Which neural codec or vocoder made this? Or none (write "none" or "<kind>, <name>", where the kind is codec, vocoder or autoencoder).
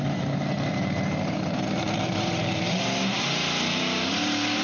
vocoder, BigVGAN v2